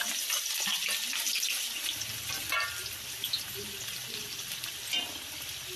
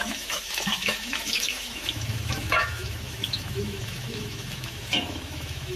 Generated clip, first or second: second